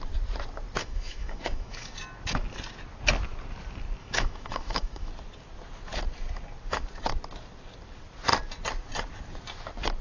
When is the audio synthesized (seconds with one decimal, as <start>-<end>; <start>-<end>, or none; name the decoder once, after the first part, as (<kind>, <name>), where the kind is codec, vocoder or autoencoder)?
0.8-1.9 (autoencoder, DAC-VAE); 4.0-5.1